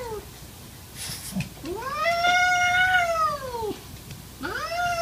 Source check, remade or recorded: recorded